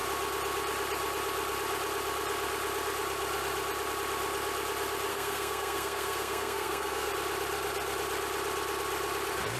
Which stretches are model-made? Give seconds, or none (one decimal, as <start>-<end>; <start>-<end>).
5.1-7.1